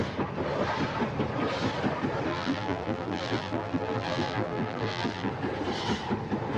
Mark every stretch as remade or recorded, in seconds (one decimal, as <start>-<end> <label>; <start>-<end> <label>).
0.0-2.3 recorded; 2.3-5.3 remade; 5.3-6.6 recorded